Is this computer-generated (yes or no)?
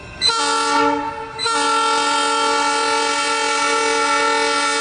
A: no